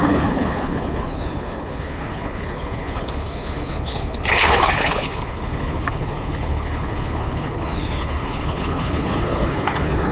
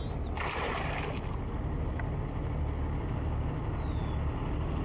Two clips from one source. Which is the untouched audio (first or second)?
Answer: second